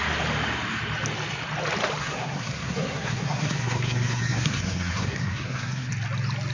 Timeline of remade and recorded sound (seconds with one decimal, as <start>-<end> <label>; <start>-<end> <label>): 0.0-2.0 recorded; 2.0-5.9 remade; 5.9-6.5 recorded